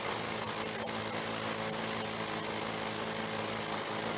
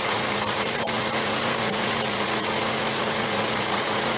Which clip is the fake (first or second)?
second